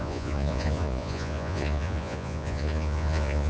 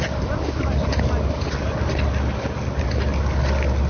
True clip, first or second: second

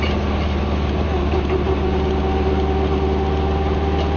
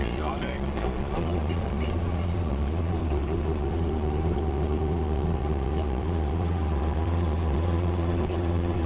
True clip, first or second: first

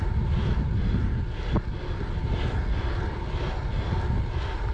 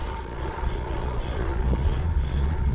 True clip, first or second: first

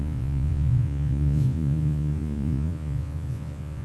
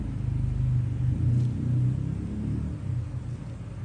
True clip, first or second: second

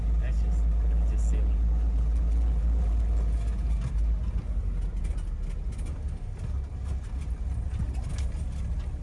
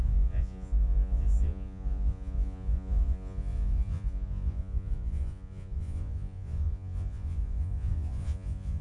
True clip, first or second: first